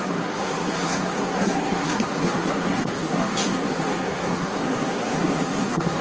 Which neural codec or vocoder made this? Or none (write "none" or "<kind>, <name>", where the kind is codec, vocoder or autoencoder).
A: codec, SNAC